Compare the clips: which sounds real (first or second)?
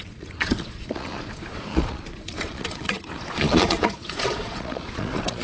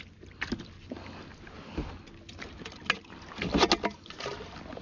second